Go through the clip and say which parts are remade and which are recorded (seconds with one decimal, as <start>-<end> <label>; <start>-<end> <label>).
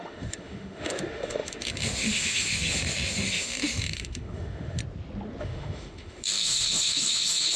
0.0-4.8 remade; 4.8-5.4 recorded; 5.4-7.6 remade